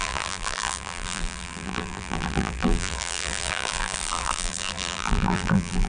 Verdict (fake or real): fake